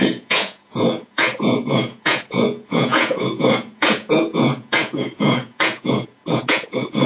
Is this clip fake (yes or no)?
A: yes